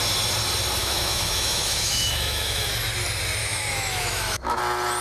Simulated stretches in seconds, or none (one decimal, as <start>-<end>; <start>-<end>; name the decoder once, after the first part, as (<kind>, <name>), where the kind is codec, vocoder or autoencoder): 0.8-2.7 (autoencoder, DAC-VAE); 3.4-4.6